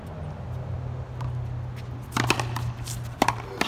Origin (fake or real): real